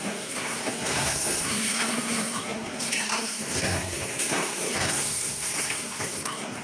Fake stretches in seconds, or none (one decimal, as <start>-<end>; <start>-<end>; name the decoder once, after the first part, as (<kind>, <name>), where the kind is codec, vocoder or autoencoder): 0.0-6.6 (codec, SNAC)